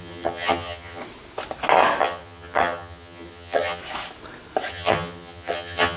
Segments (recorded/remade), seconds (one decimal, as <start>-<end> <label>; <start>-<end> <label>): 0.0-1.0 remade; 1.0-2.0 recorded; 2.0-3.8 remade; 3.8-4.7 recorded; 4.7-6.0 remade